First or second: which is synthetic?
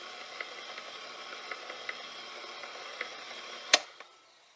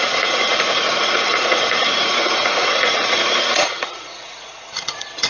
second